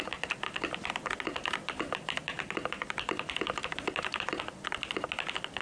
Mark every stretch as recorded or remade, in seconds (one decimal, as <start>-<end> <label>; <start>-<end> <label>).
0.0-5.6 recorded